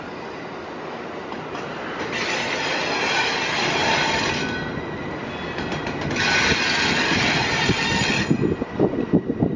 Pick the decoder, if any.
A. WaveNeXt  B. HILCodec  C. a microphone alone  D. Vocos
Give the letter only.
C